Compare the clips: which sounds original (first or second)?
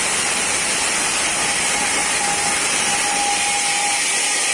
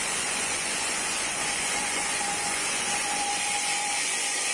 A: first